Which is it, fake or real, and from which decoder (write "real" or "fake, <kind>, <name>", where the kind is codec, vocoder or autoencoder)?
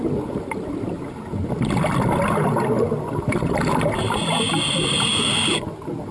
real